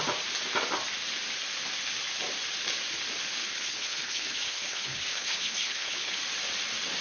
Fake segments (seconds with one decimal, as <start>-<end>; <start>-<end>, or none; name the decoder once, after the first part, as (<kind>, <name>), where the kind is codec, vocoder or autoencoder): 3.4-6.2 (codec, HILCodec)